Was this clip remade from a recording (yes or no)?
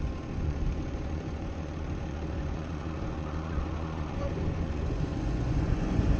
yes